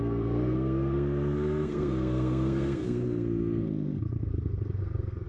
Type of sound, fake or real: fake